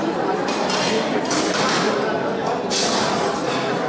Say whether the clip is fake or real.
real